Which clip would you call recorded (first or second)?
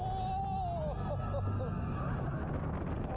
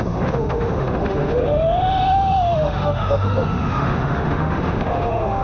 first